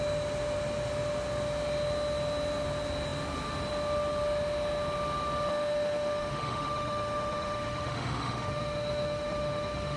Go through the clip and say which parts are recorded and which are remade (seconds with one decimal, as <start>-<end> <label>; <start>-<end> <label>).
0.0-5.5 recorded; 5.5-10.0 remade